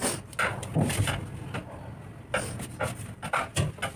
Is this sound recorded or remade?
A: recorded